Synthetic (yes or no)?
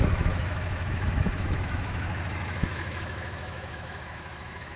yes